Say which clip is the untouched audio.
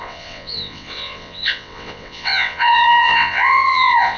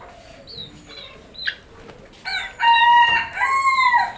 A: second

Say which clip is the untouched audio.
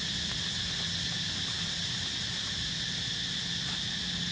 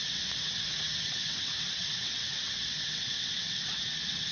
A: first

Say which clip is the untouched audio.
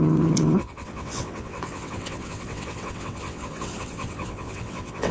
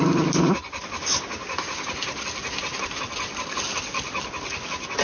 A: second